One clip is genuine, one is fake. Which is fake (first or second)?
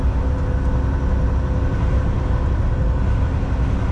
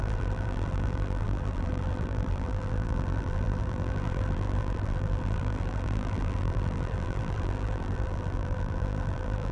second